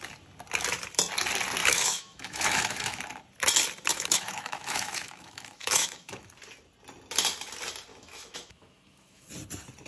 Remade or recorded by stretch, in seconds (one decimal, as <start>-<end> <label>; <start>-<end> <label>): 0.0-1.6 recorded; 1.6-3.0 remade; 3.0-3.9 recorded; 3.9-6.3 remade; 6.3-7.9 recorded; 7.9-9.3 remade; 9.3-9.9 recorded